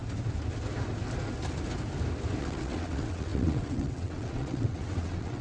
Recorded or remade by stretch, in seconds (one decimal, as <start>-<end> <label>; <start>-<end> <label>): 0.0-2.4 recorded; 2.4-5.4 remade